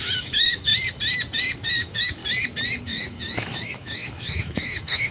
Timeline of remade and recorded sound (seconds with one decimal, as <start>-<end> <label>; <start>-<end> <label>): 0.0-0.7 remade; 0.7-1.7 recorded; 1.7-2.2 remade; 2.2-2.8 recorded; 2.8-5.1 remade